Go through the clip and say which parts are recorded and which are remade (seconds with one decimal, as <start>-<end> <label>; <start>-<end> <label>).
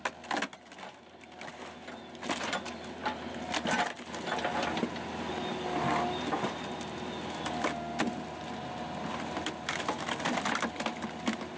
0.0-11.6 recorded